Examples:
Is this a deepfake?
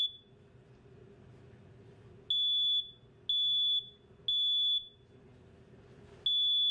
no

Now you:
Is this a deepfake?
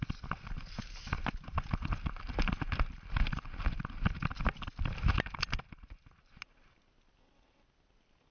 no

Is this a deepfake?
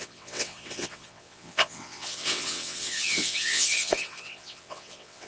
yes